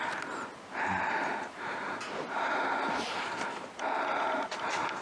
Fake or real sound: real